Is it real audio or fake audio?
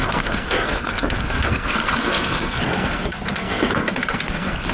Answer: fake